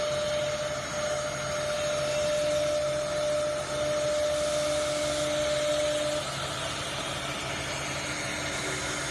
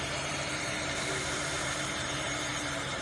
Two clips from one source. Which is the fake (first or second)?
second